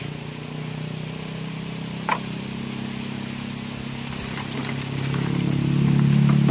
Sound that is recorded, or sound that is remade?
recorded